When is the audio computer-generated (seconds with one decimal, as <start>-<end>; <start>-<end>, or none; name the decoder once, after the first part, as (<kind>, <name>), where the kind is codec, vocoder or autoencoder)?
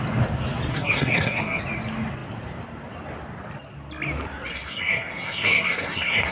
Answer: 0.7-1.6 (codec, SNAC); 4.5-6.3